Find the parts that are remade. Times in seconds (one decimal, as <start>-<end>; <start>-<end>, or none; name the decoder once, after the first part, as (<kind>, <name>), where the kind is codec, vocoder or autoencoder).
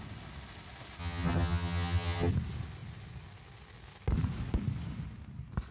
1.0-2.3 (vocoder, HiFi-GAN)